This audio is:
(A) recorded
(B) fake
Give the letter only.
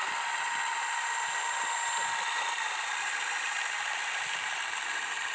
A